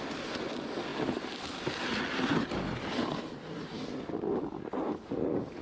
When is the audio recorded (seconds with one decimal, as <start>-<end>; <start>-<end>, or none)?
0.0-5.6